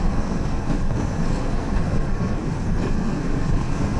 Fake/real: fake